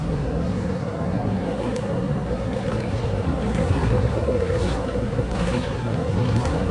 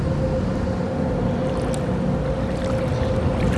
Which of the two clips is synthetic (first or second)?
first